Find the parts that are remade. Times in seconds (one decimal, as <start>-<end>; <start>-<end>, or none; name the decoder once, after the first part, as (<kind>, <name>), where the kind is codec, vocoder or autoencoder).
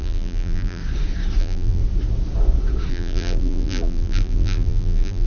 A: 0.0-0.8 (vocoder, BigVGAN v2); 1.4-1.8; 2.9-5.3